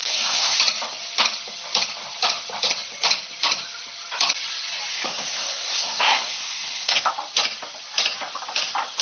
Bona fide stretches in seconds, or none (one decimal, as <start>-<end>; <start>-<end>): 0.6-4.9; 7.1-9.0